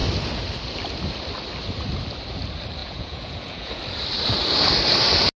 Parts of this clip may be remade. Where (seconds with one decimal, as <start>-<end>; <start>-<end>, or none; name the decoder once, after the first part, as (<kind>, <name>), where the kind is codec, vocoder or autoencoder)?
2.8-3.8 (vocoder, Vocos)